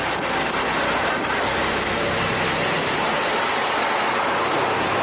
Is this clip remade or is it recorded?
recorded